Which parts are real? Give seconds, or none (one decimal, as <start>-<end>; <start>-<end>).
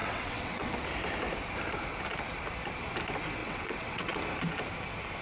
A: 0.7-3.4; 4.2-5.2